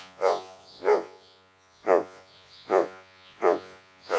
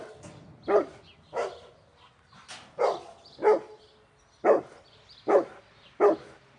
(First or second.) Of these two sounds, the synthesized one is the first